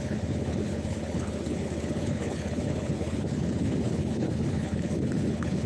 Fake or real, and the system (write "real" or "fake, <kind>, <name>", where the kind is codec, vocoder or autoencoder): fake, codec, HILCodec